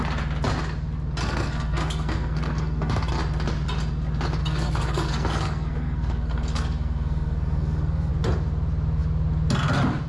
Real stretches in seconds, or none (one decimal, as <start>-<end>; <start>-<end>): 0.0-1.2; 3.1-4.4; 8.1-10.1